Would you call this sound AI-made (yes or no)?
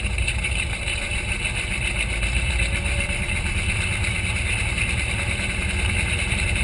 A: yes